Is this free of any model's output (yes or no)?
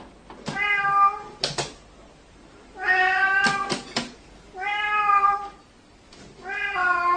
yes